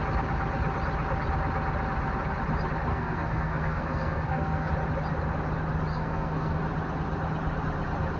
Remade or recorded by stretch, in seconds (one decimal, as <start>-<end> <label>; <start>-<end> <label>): 0.0-2.9 recorded; 2.9-4.7 remade; 4.7-5.9 recorded; 5.9-6.6 remade; 6.6-8.2 recorded